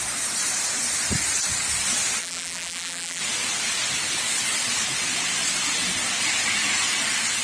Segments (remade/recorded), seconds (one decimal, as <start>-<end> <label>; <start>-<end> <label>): 0.0-2.2 recorded; 2.2-3.2 remade; 3.2-7.4 recorded